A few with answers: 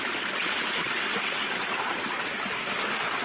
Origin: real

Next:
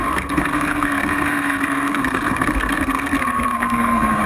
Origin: fake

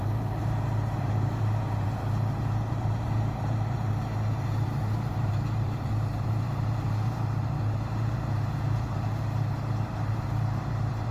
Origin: fake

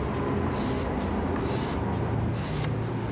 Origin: real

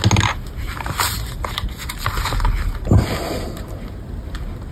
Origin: real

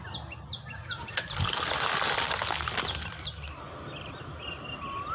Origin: real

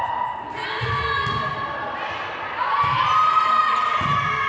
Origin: real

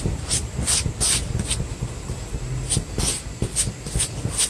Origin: real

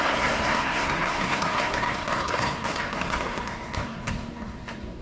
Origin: fake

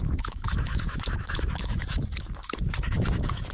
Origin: fake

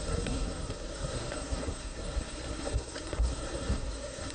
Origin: fake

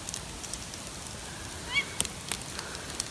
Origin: real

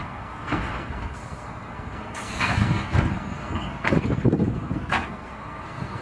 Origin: fake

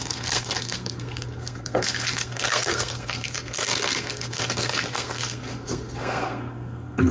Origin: fake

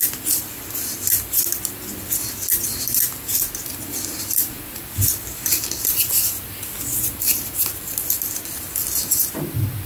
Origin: real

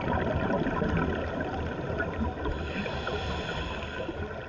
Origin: real